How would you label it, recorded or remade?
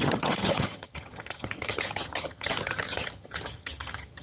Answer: remade